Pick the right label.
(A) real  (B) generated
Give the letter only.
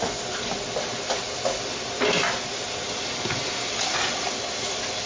A